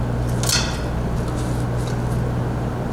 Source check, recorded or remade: recorded